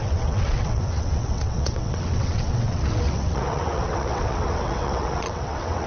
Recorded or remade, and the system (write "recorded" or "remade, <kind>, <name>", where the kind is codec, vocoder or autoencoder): remade, vocoder, WaveNeXt